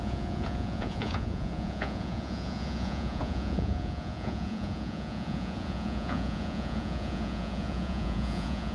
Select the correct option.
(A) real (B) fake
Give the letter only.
B